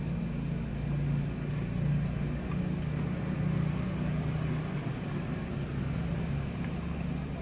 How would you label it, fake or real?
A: real